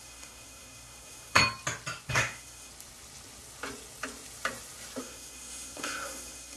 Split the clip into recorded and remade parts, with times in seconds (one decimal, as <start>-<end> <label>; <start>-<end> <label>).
0.0-1.4 remade; 1.4-2.1 recorded; 2.1-2.7 remade; 2.7-5.0 recorded; 5.0-6.6 remade